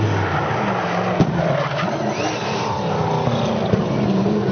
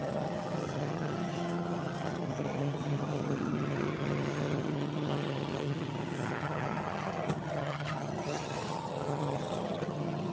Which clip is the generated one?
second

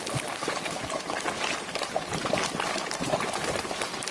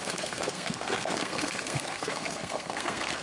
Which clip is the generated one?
second